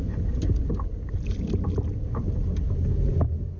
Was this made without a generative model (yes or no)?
yes